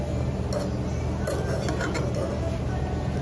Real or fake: real